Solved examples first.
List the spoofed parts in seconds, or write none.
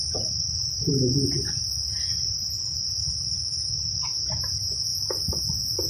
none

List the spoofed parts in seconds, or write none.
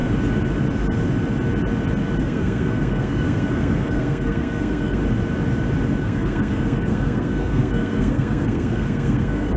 2.2-5.0; 6.0-9.6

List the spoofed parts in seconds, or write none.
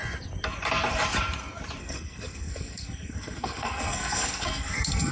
1.8-5.1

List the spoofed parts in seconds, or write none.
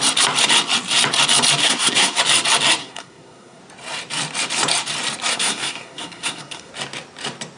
1.6-2.2; 2.8-3.6; 5.3-6.7